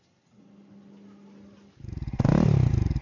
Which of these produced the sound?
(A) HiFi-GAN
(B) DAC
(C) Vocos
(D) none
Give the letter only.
D